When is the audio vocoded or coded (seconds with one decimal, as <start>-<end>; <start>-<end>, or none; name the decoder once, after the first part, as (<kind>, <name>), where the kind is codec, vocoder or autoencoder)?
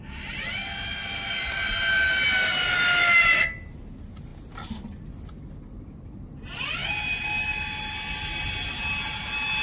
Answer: none